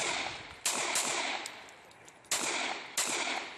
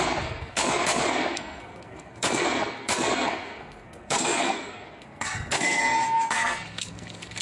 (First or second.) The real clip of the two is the first